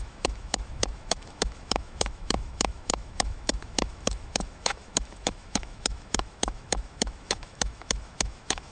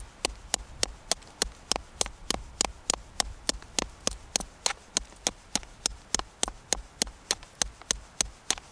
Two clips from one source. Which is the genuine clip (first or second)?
second